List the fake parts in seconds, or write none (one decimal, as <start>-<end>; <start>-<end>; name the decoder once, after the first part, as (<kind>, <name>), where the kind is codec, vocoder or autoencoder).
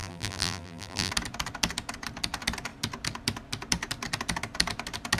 0.0-1.1 (vocoder, BigVGAN v2)